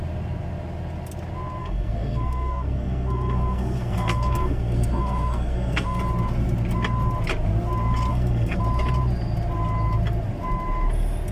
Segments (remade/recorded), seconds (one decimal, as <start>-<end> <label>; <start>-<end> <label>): 0.0-1.6 recorded; 1.6-6.0 remade; 6.0-8.1 recorded; 8.1-8.6 remade; 8.6-11.3 recorded